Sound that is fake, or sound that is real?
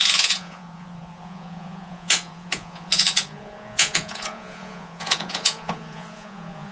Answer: fake